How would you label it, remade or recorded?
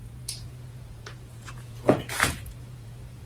remade